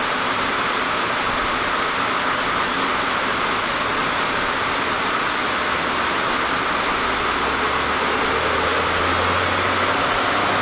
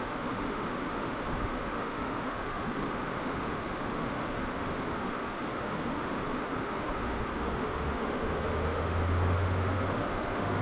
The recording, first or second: first